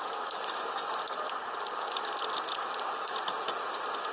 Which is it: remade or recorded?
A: recorded